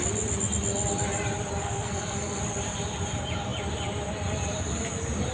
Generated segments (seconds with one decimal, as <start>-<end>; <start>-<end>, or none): 1.6-2.4